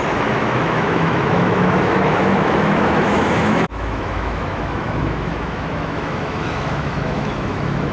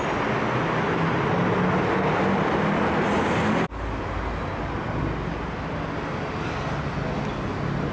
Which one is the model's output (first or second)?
first